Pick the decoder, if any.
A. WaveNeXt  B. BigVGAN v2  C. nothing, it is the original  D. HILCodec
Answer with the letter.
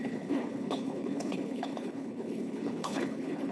D